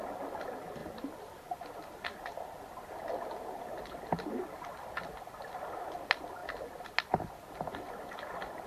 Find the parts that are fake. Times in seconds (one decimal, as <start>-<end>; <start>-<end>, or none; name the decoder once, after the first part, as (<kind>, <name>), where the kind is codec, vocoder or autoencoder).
none